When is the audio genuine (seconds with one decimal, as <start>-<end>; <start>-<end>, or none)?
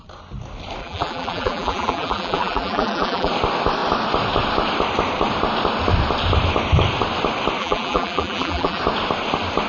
0.0-0.8; 3.3-7.6; 8.8-9.7